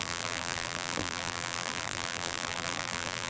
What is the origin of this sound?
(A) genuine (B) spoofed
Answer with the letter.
B